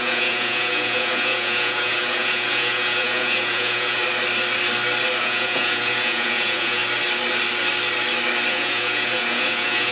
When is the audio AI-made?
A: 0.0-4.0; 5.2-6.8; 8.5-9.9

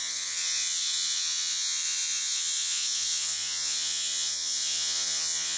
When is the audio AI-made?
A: 0.0-5.6

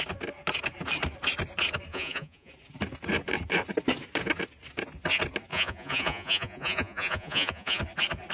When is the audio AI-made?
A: 1.9-2.5; 5.5-7.8

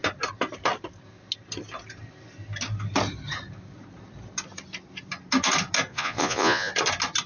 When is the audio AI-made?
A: 5.9-6.7

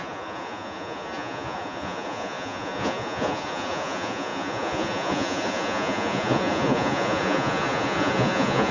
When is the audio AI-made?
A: 0.0-8.7

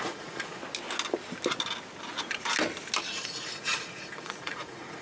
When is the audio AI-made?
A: 0.0-0.6; 3.1-5.0

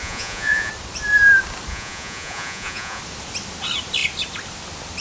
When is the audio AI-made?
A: 0.0-0.7; 1.7-3.0

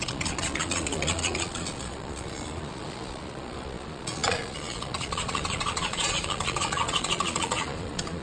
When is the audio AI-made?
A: 0.0-8.2